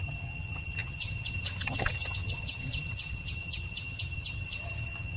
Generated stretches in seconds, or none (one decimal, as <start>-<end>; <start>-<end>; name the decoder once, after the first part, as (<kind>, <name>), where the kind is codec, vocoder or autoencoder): 0.0-5.2 (vocoder, HiFi-GAN)